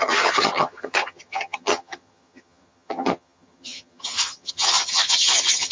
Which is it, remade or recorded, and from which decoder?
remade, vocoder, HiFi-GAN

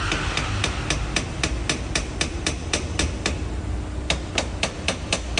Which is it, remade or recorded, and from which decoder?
recorded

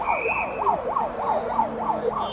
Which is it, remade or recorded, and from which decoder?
recorded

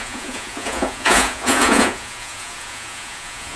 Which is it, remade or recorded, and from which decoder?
remade, vocoder, Vocos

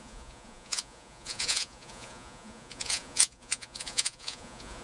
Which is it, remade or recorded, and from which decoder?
remade, vocoder, Vocos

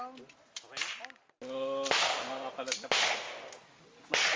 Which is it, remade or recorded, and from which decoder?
recorded